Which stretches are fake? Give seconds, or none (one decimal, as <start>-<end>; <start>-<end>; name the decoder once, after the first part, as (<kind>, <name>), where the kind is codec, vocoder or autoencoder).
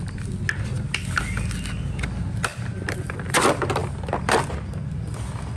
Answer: none